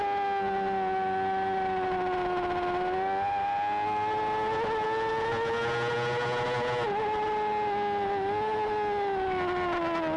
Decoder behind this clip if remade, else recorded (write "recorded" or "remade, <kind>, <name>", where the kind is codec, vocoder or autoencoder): recorded